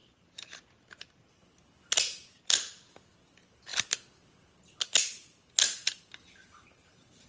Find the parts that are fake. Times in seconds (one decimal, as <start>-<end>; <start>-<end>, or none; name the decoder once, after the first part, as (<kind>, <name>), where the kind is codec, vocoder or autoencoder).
none